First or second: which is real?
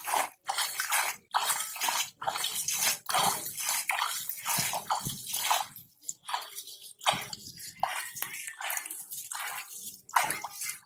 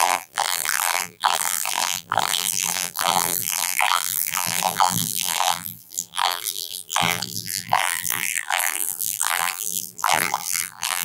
first